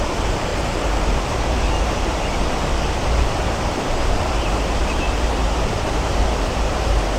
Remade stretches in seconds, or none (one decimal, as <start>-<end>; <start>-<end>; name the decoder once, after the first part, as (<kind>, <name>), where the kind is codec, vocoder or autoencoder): 0.0-7.2 (vocoder, BigVGAN v2)